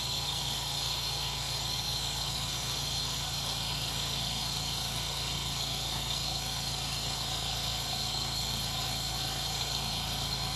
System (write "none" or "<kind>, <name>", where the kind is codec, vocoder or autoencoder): codec, SNAC